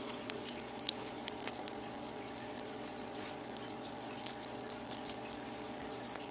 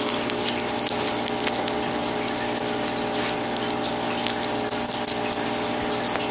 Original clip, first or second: second